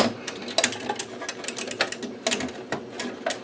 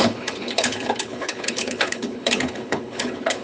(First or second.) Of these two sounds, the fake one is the second